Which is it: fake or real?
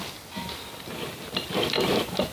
real